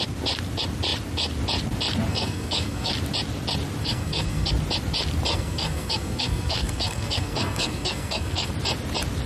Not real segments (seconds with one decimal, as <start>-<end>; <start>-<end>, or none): 2.1-2.9; 3.8-4.5; 5.3-8.5